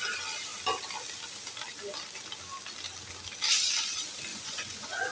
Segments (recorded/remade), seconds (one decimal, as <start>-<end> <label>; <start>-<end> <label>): 0.0-4.3 recorded; 4.3-5.1 remade